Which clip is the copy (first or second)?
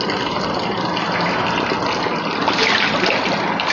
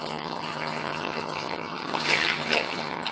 second